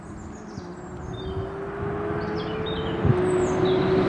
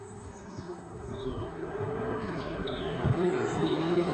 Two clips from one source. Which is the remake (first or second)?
second